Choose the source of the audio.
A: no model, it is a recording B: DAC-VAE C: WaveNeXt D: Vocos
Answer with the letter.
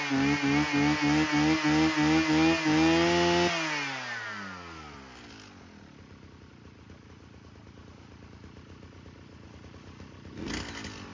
A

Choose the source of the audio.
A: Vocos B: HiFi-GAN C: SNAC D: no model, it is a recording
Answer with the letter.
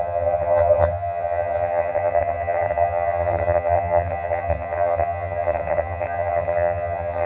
B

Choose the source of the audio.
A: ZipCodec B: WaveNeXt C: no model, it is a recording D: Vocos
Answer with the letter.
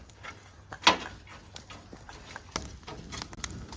C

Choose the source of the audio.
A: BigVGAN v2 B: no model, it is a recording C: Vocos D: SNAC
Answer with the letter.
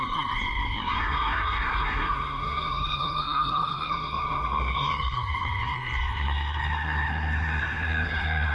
D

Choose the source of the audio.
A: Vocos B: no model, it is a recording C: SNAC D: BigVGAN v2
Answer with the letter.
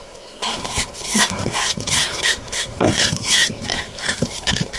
C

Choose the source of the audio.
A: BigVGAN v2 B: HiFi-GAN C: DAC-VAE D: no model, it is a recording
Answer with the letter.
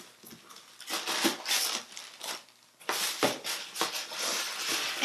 D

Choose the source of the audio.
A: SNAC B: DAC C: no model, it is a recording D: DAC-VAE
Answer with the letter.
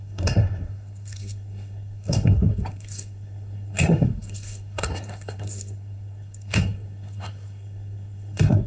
A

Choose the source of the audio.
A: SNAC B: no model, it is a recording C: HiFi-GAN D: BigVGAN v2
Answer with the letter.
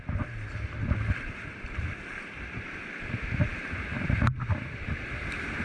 B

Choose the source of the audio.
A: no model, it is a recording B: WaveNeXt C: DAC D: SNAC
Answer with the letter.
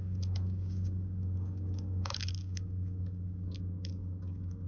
C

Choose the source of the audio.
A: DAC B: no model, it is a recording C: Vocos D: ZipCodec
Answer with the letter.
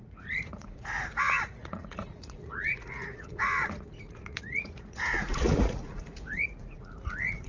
C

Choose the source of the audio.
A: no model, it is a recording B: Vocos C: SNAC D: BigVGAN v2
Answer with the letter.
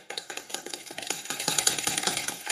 C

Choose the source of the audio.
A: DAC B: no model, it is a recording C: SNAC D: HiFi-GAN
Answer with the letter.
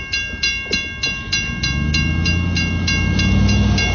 B